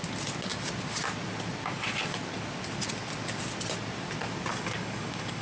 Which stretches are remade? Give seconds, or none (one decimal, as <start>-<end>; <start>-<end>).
4.5-5.4